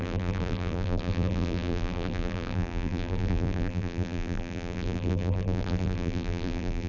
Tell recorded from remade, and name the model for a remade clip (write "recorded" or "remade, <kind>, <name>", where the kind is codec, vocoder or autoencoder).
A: remade, vocoder, BigVGAN v2